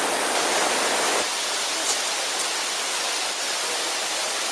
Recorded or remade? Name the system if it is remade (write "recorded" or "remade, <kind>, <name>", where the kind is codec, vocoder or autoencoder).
recorded